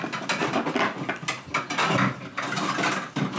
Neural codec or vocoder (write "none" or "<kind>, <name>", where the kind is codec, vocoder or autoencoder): none